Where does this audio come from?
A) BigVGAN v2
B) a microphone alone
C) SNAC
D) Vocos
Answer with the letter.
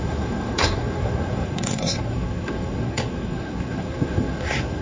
C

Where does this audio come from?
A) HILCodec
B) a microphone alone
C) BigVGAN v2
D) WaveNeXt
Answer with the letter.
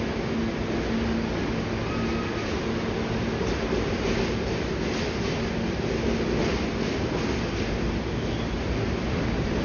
B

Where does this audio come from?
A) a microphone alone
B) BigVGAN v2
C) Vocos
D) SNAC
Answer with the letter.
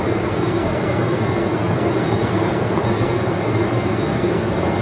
D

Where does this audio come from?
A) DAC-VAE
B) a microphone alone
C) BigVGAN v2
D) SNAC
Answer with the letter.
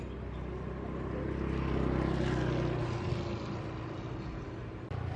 B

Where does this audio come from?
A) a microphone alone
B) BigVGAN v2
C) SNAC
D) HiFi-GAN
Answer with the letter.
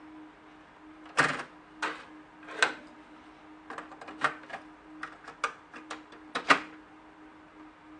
A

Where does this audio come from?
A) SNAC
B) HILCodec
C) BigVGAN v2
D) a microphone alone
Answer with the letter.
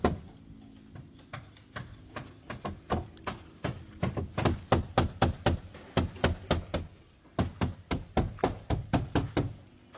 D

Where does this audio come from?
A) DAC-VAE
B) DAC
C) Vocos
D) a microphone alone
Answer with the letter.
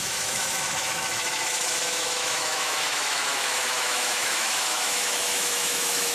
A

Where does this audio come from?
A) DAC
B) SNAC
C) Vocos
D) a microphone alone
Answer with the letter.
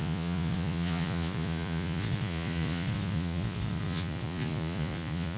C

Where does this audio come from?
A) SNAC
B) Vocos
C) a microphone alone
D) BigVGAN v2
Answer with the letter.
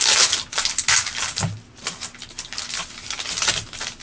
C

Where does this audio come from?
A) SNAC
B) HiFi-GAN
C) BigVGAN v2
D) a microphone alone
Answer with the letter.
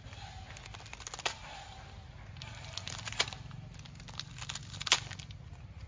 D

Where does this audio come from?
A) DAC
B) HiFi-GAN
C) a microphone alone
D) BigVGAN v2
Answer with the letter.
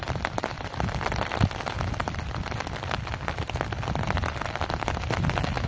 C